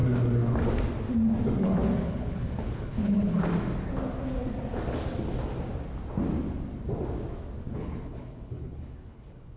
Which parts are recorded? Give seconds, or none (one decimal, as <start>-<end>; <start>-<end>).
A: 0.0-2.0; 3.5-7.6